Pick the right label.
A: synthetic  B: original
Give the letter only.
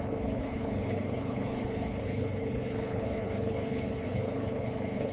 A